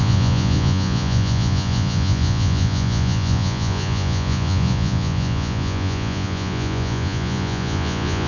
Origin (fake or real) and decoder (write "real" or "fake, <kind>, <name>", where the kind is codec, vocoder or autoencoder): fake, vocoder, Vocos